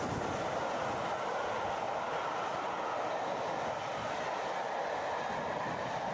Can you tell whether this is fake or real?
real